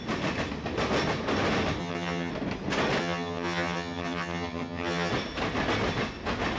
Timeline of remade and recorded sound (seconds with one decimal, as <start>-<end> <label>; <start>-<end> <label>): 0.0-1.8 recorded; 1.8-2.3 remade; 2.3-3.0 recorded; 3.0-5.1 remade; 5.1-6.6 recorded